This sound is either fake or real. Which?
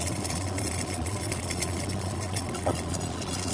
fake